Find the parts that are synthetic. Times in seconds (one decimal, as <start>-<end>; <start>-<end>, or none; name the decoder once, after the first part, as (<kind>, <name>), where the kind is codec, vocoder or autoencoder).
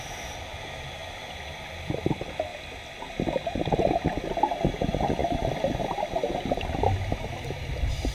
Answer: none